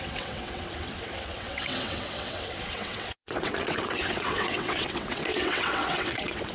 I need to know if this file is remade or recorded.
remade